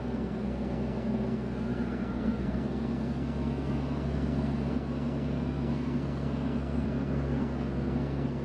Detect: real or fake fake